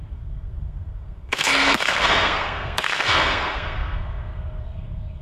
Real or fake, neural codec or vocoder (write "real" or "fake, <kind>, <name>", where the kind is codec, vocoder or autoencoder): fake, codec, SNAC